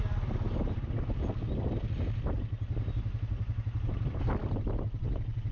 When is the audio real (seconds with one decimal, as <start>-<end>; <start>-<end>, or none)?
0.0-5.5